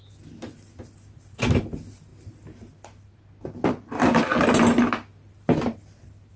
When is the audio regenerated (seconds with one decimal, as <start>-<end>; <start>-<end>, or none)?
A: none